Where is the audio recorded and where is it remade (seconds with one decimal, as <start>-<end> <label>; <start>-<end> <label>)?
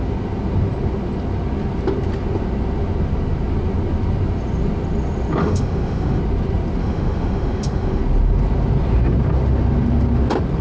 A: 0.0-5.4 recorded; 5.4-6.2 remade; 6.2-6.8 recorded; 6.8-8.0 remade; 8.0-10.6 recorded